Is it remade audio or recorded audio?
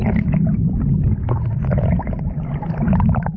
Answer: recorded